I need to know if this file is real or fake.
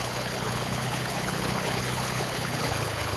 fake